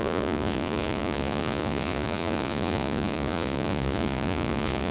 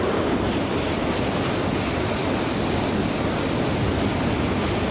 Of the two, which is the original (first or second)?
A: second